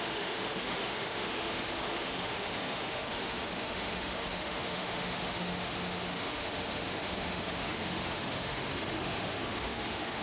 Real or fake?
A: fake